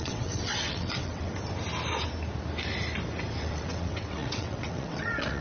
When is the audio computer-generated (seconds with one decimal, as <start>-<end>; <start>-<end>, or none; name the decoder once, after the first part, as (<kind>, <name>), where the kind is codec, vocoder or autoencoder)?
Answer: 0.0-1.3 (vocoder, WaveNeXt); 3.4-5.4